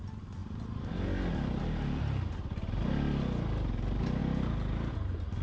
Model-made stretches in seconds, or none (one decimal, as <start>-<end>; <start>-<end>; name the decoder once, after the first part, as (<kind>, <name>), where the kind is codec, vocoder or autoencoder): none